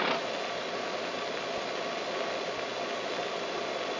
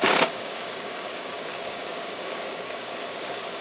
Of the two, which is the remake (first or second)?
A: second